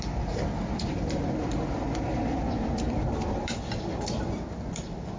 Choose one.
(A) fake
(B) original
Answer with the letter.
A